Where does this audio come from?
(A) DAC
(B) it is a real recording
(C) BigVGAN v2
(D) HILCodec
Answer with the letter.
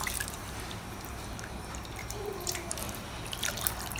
C